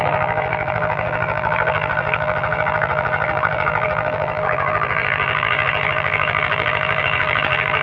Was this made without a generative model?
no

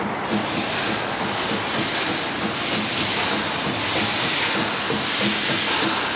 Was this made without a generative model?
yes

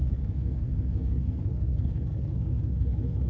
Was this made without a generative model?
no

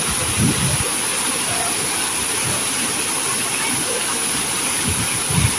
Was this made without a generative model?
yes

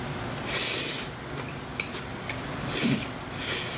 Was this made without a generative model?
yes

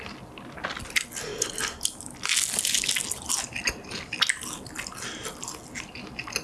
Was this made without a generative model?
yes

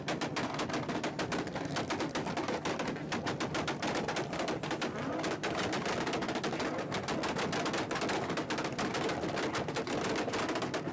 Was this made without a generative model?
yes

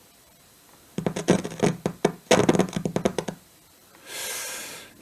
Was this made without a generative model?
yes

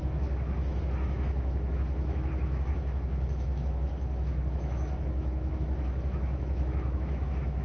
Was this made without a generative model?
no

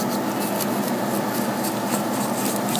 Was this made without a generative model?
yes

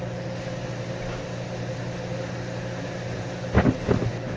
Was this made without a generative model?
yes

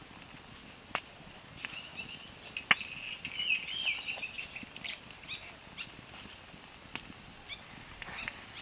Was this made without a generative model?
yes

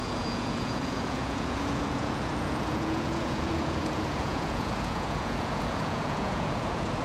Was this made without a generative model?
no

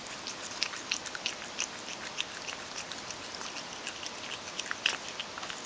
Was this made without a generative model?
yes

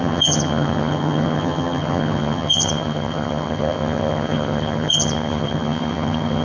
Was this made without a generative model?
no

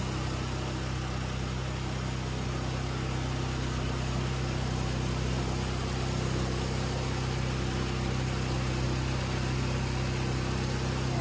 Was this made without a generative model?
yes